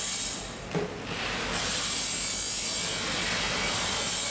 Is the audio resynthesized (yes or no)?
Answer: no